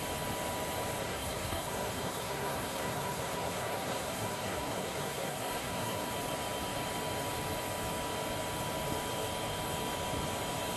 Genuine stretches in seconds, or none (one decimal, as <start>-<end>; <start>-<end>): 0.0-1.0; 6.1-10.8